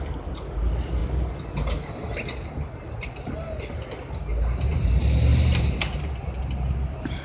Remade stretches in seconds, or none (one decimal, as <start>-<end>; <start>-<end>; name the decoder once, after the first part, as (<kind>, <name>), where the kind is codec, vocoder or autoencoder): 5.3-5.8 (vocoder, BigVGAN v2)